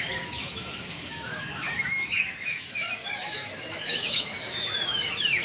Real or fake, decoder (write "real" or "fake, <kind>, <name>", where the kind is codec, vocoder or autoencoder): fake, autoencoder, DAC-VAE